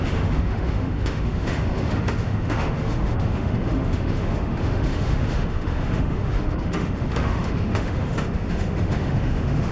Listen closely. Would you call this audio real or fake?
fake